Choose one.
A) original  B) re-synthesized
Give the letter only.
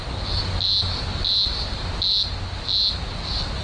A